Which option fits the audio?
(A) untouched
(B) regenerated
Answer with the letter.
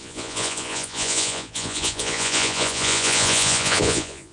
B